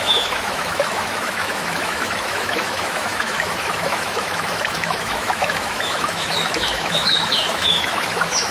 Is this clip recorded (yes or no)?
no